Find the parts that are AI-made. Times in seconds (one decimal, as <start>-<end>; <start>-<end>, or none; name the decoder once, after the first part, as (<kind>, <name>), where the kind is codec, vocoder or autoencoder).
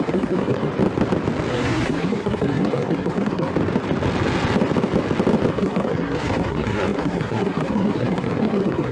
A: 0.0-0.7 (codec, SNAC); 1.5-3.5; 5.5-8.9